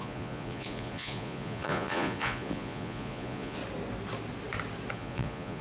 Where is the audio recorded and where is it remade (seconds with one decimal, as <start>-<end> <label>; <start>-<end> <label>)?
0.0-3.6 remade; 3.6-4.9 recorded; 4.9-5.6 remade